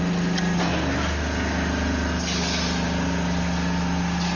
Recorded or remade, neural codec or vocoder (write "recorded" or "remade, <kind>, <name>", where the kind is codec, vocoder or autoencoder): recorded